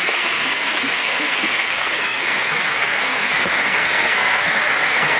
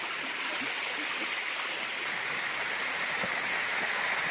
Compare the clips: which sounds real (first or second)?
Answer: second